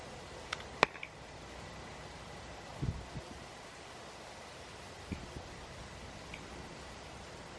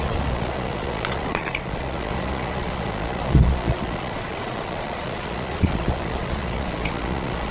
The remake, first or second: second